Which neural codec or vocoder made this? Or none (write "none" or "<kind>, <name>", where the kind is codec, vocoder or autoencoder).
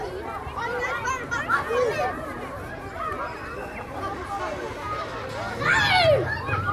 none